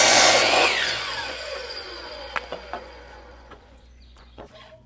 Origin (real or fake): fake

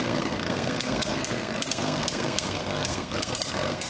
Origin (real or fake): fake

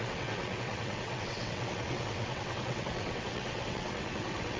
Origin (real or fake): fake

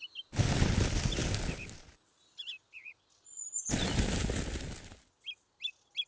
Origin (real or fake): real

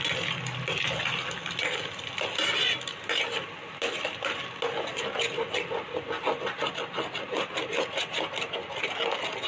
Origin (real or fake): real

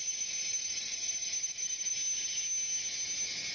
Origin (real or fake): real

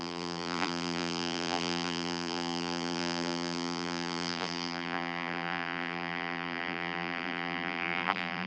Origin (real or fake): fake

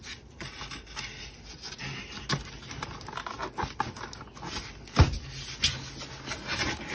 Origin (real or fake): real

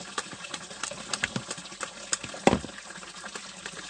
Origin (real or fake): real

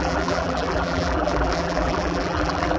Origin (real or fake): fake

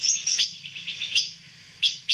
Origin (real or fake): fake